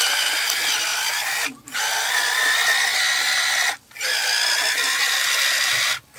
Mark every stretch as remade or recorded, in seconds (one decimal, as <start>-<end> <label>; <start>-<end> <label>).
0.0-6.2 recorded